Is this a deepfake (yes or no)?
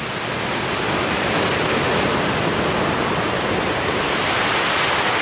no